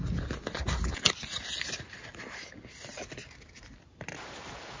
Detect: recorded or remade recorded